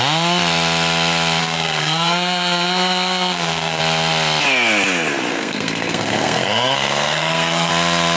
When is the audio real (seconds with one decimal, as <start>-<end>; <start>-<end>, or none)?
0.0-1.4; 3.8-5.3; 7.7-8.2